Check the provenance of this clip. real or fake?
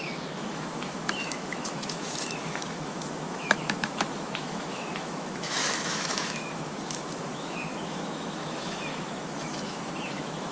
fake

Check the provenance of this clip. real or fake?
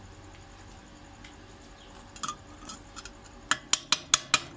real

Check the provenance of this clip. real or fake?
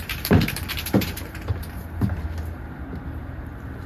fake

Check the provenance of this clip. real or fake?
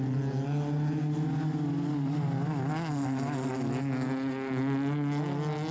real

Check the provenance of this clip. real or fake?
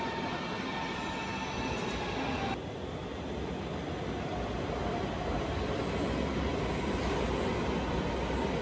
real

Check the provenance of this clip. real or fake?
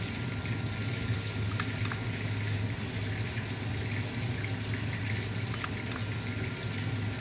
real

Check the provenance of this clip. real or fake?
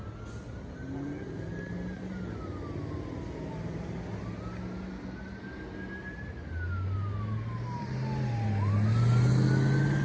real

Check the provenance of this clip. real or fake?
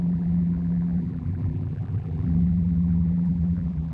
fake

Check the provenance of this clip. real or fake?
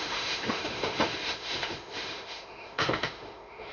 fake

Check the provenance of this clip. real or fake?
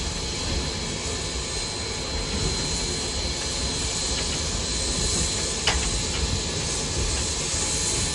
real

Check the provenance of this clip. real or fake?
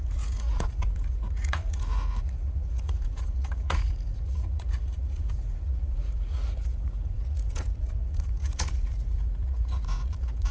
fake